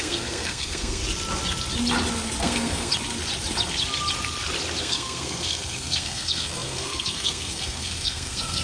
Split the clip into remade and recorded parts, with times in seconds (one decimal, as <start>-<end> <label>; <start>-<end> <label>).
0.0-1.0 remade; 1.0-2.4 recorded; 2.4-2.9 remade; 2.9-4.8 recorded; 4.8-8.6 remade